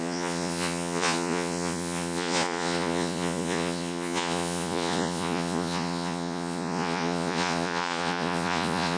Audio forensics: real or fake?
fake